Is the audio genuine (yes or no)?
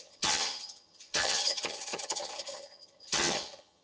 no